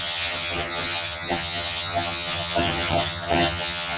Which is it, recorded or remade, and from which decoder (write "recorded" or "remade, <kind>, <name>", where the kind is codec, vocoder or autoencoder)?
remade, vocoder, HiFi-GAN